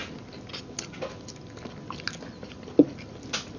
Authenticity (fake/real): real